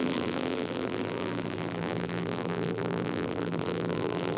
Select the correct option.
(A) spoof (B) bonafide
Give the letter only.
A